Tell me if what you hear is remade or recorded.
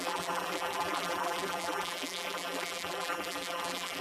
remade